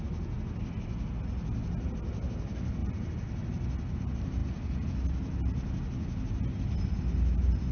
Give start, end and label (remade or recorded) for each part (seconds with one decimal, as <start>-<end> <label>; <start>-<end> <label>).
0.0-7.7 recorded